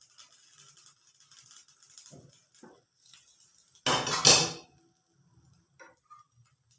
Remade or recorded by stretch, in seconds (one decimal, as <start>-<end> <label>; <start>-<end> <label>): 0.0-6.8 recorded